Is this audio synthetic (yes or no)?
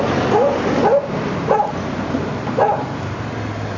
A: no